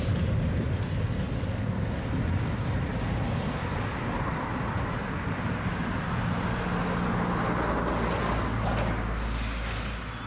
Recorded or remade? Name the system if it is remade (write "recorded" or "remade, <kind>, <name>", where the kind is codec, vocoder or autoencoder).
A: recorded